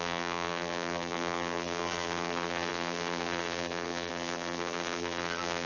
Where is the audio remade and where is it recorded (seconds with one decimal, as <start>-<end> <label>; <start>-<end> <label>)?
0.0-5.7 remade